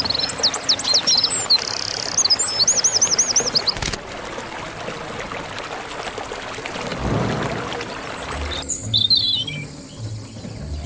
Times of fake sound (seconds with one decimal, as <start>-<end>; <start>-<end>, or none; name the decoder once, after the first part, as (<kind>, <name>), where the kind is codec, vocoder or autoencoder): none